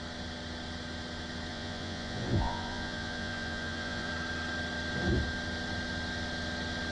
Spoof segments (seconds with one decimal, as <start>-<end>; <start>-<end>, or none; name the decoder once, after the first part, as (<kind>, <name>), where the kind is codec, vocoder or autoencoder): 1.5-4.1 (vocoder, Vocos)